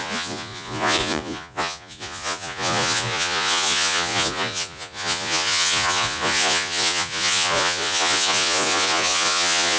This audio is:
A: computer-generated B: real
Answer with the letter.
A